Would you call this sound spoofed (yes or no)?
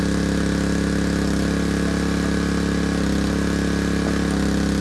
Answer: no